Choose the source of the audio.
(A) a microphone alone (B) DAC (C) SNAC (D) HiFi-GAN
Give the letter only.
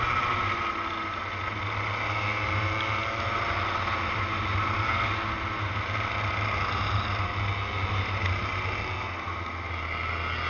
A